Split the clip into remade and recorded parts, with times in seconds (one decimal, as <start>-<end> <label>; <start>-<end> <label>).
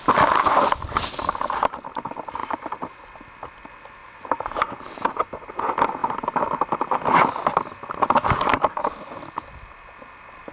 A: 0.0-2.4 recorded; 2.4-2.9 remade; 2.9-4.0 recorded; 4.0-5.5 remade; 5.5-10.5 recorded